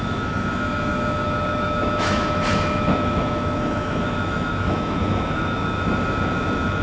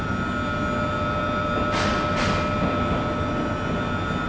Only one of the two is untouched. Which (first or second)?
second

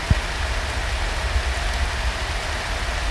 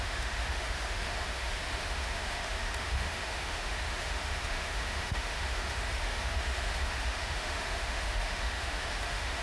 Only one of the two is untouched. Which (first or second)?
first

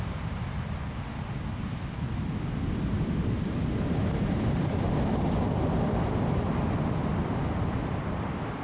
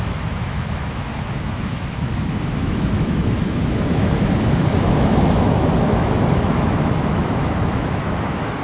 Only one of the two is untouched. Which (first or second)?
first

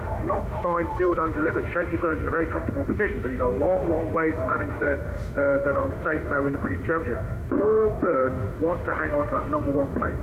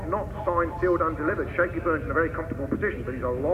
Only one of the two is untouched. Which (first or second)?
second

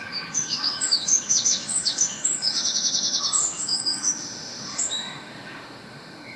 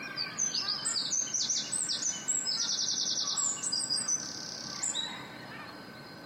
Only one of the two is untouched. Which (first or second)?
second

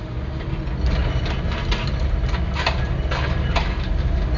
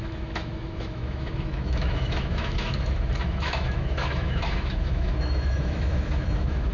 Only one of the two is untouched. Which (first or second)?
first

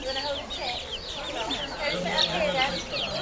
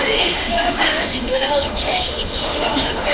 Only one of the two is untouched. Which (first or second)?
first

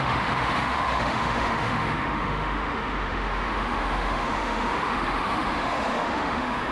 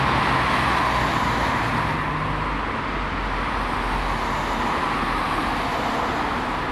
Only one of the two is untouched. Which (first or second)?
second